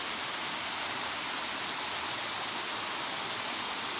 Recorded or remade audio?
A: recorded